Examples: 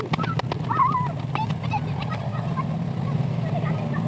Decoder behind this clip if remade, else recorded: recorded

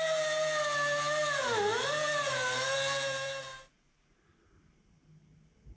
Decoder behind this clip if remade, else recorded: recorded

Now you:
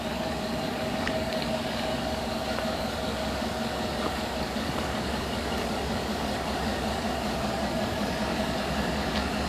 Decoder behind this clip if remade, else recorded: remade, codec, DAC